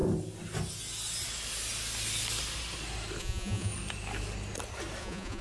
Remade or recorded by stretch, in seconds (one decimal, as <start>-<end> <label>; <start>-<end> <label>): 0.0-3.2 recorded; 3.2-3.7 remade; 3.7-5.0 recorded; 5.0-5.4 remade

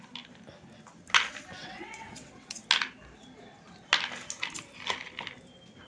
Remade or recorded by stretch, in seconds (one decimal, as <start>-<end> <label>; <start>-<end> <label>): 0.0-1.6 recorded; 1.6-2.6 remade; 2.6-5.9 recorded

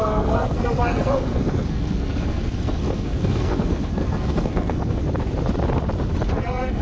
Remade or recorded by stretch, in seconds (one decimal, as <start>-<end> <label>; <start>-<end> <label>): 0.0-5.0 remade; 5.0-6.3 recorded; 6.3-6.8 remade